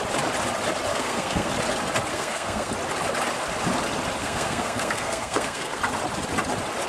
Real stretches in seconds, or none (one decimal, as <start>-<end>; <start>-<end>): 0.0-0.9; 1.5-2.1; 2.7-4.2; 5.8-6.9